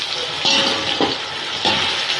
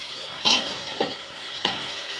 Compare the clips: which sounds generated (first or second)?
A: second